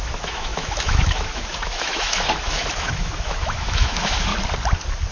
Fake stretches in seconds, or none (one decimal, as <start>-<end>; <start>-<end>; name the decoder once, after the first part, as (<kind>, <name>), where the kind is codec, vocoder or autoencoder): 0.0-4.3 (autoencoder, DAC-VAE)

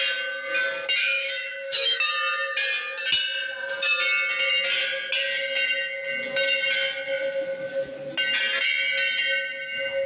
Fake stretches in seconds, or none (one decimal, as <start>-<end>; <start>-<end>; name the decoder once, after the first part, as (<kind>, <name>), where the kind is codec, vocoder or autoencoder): 1.0-2.1 (autoencoder, DAC-VAE)

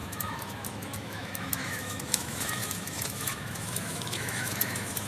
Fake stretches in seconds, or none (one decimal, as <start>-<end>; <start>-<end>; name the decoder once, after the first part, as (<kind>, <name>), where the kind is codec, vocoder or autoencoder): 0.0-5.1 (autoencoder, DAC-VAE)

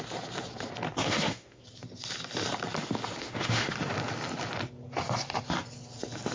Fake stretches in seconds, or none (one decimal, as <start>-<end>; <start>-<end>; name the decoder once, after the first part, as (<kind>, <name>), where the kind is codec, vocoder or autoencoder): 1.0-1.6 (autoencoder, DAC-VAE); 3.2-3.7

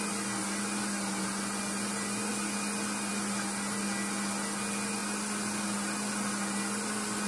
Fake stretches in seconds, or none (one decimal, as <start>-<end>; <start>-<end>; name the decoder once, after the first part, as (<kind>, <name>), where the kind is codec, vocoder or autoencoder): none